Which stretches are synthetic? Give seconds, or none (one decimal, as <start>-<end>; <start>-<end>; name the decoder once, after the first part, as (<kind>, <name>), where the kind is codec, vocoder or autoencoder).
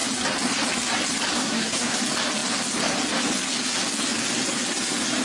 1.4-2.0 (codec, SNAC)